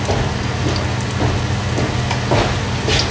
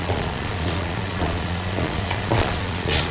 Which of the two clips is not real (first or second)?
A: second